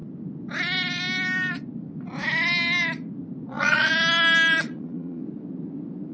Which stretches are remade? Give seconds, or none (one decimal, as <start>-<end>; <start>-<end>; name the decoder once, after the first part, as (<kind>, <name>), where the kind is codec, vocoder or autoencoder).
3.5-3.9 (vocoder, Vocos); 4.6-5.2